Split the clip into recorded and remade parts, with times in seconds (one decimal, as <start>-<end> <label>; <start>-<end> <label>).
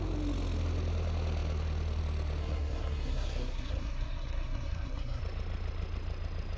0.0-2.4 recorded; 2.4-5.2 remade; 5.2-6.6 recorded